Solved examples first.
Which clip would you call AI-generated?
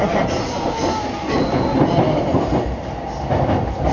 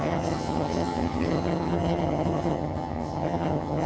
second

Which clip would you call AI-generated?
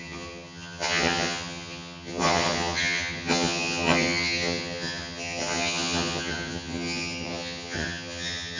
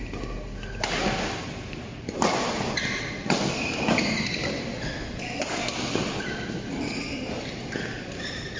first